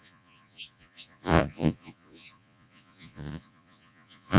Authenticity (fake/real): fake